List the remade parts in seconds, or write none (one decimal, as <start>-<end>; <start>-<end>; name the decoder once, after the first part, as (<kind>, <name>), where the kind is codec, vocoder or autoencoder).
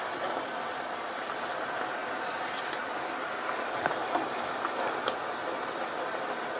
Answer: none